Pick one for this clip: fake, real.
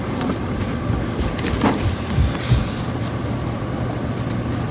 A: real